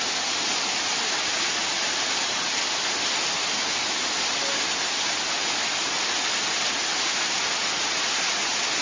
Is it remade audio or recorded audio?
recorded